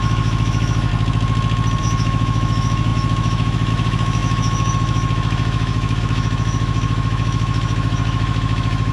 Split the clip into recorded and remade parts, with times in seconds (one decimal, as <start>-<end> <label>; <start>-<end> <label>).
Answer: 0.0-0.9 remade; 0.9-1.8 recorded; 1.8-8.9 remade